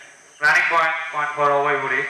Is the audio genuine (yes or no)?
yes